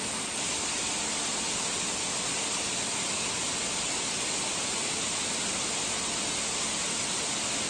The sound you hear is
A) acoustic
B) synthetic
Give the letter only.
A